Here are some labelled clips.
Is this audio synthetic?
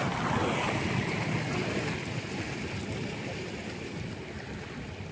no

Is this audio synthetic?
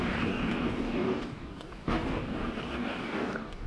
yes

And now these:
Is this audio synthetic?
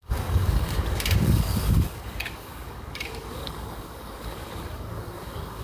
yes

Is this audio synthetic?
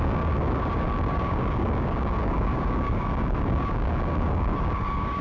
yes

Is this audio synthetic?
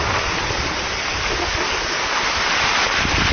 no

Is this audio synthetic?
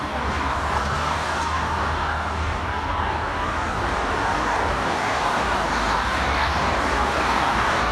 yes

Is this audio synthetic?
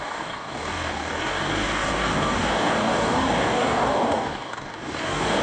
yes